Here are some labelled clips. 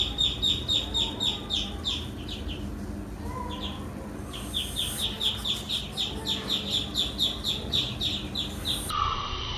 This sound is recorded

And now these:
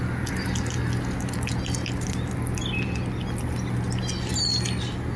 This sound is recorded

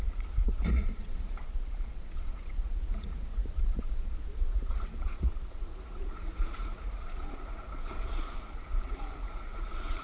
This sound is remade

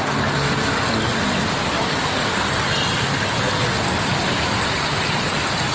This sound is recorded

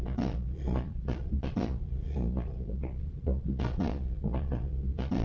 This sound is remade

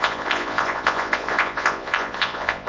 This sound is remade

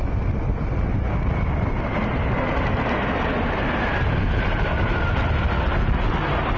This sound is recorded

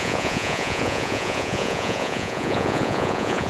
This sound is remade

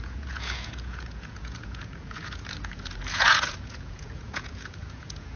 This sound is remade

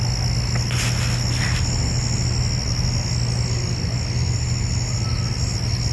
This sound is recorded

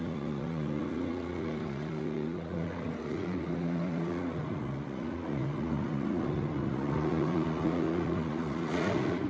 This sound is remade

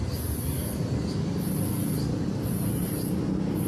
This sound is recorded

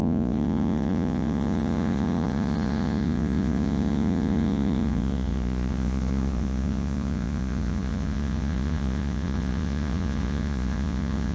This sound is remade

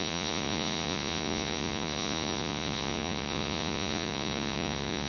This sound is remade